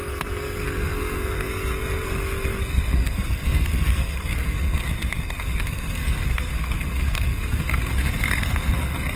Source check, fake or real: fake